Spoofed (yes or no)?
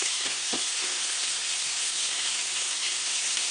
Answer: yes